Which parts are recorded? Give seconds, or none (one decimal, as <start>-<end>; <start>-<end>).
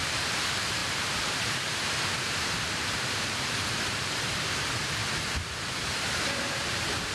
5.0-5.9